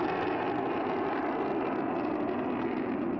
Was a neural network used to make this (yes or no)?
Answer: no